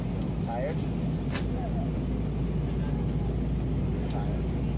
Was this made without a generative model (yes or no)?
yes